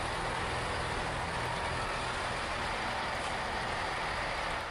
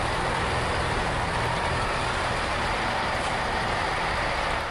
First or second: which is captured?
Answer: first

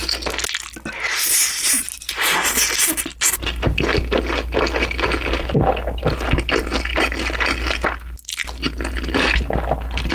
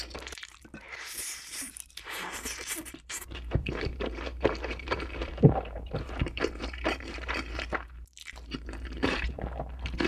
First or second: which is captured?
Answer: first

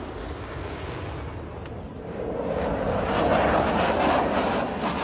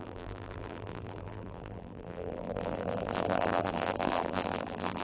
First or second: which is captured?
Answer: first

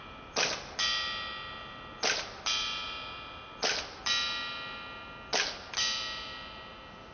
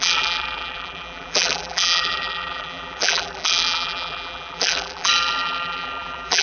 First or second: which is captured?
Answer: first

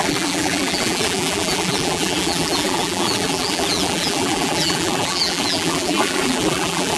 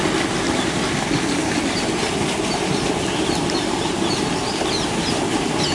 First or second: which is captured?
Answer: second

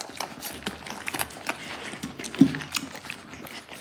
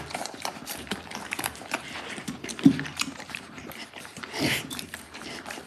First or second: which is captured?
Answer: first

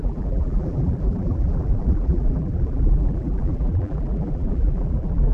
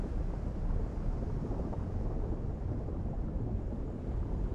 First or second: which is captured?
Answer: second